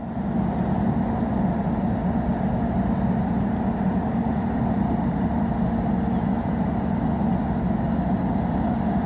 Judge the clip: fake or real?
real